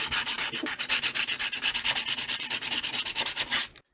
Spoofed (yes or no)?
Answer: no